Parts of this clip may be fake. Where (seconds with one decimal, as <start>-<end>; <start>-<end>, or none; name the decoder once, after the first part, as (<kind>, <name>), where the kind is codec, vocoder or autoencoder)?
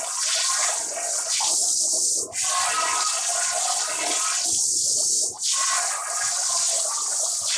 none